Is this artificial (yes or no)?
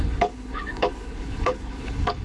yes